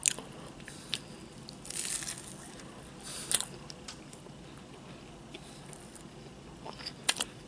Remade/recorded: recorded